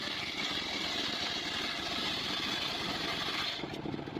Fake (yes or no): no